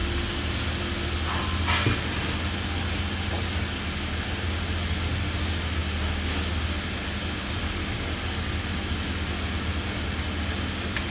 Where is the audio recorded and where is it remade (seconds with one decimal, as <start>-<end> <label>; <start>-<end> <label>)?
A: 0.0-11.1 recorded